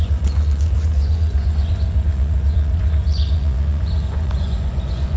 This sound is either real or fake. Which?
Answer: fake